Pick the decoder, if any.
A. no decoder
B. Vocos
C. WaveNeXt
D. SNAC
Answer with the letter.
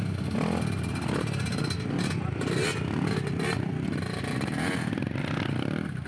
A